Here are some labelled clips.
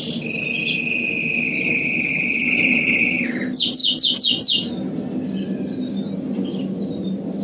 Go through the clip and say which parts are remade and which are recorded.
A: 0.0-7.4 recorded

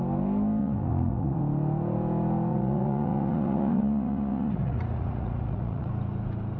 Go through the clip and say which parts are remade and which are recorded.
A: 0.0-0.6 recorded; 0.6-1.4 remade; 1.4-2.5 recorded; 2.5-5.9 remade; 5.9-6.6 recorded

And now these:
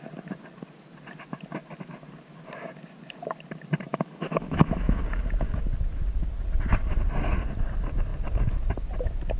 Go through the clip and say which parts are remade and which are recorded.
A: 0.0-3.9 recorded; 3.9-5.0 remade; 5.0-9.4 recorded

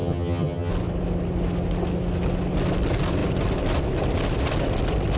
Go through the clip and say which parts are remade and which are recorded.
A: 0.0-0.7 remade; 0.7-5.2 recorded

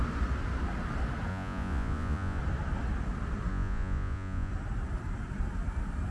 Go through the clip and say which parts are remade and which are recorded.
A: 0.0-1.3 recorded; 1.3-2.4 remade; 2.4-3.5 recorded; 3.5-4.5 remade; 4.5-6.1 recorded

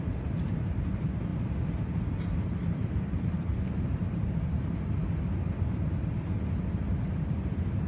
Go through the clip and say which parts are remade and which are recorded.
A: 0.0-1.3 remade; 1.3-2.2 recorded; 2.2-5.0 remade; 5.0-6.7 recorded; 6.7-7.9 remade